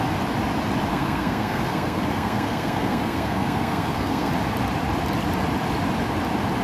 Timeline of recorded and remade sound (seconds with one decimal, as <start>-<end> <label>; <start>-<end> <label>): 0.0-0.9 recorded; 0.9-4.3 remade; 4.3-6.6 recorded